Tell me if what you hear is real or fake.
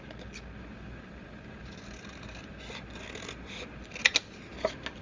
real